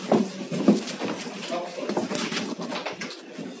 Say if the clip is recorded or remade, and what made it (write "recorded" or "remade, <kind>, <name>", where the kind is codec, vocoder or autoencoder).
recorded